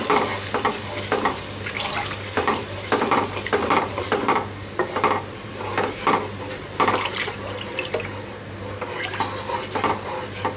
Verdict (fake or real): real